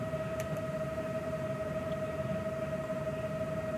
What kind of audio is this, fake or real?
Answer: fake